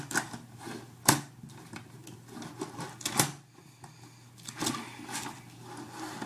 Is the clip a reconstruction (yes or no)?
no